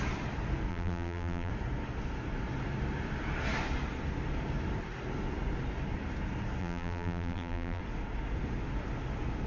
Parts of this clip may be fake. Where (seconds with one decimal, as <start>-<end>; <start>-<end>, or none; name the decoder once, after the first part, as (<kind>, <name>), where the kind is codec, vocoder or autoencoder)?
0.7-1.5 (vocoder, BigVGAN v2); 6.6-7.8